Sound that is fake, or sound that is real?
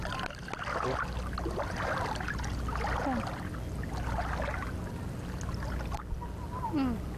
real